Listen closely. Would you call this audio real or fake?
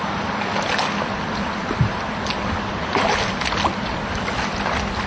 real